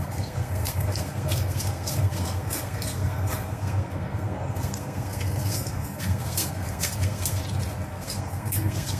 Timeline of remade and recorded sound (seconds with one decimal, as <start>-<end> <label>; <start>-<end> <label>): 0.0-7.4 remade; 7.4-7.9 recorded; 7.9-9.0 remade